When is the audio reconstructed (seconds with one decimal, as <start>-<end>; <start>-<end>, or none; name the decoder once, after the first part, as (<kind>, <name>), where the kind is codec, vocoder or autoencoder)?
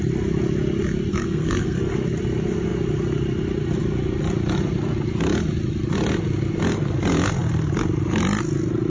1.1-1.9 (codec, SNAC)